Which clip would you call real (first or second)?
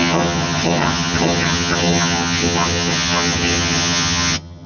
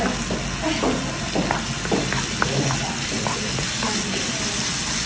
second